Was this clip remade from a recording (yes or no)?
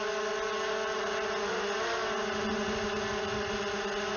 no